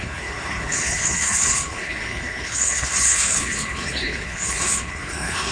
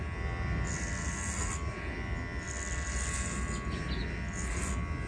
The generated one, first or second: first